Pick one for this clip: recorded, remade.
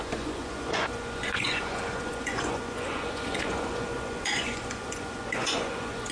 remade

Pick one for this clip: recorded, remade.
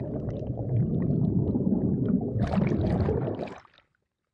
recorded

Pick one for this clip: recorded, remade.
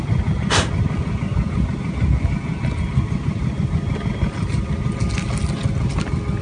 recorded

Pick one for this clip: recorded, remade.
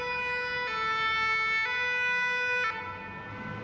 recorded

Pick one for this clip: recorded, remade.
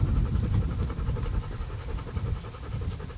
recorded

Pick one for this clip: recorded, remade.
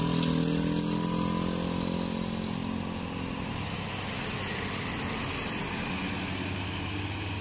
recorded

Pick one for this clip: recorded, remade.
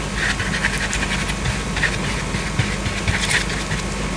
recorded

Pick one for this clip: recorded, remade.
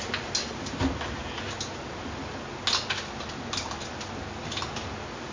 recorded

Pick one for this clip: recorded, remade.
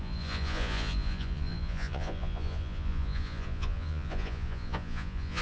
remade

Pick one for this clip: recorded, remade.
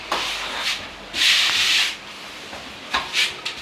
recorded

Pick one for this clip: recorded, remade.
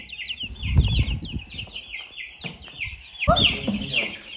recorded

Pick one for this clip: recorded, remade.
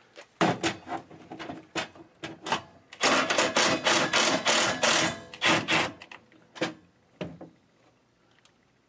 recorded